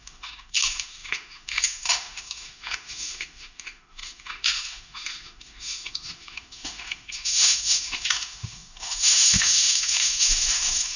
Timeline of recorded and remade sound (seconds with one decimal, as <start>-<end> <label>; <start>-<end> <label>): 0.0-11.0 remade